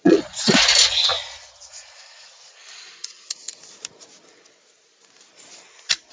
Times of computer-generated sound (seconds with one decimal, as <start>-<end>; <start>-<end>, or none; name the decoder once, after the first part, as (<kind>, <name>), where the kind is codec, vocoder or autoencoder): 0.0-1.1 (vocoder, Vocos); 1.7-3.5